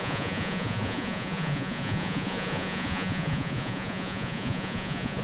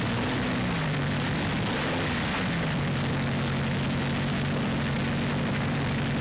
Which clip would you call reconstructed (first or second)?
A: first